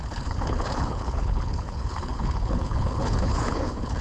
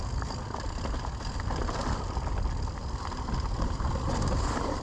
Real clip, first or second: second